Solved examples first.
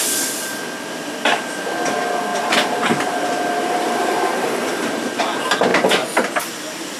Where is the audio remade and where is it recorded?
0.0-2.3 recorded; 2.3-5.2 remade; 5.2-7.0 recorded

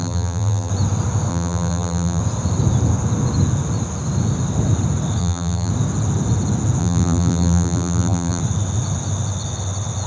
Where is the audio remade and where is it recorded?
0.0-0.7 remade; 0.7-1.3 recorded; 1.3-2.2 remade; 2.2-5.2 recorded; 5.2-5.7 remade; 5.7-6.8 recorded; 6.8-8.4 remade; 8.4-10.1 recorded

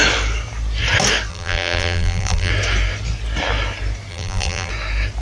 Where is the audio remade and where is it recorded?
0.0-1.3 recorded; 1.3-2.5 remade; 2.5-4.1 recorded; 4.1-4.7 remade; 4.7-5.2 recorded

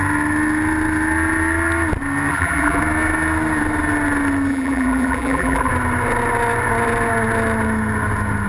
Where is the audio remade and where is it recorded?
0.0-2.3 recorded; 2.3-2.8 remade; 2.8-4.5 recorded; 4.5-5.7 remade; 5.7-8.5 recorded